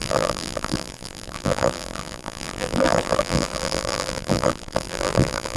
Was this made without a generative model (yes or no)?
no